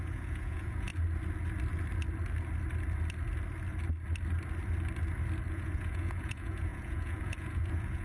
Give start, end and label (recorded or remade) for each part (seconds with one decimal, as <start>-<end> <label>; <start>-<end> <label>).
0.0-0.9 remade; 0.9-5.5 recorded; 5.5-8.0 remade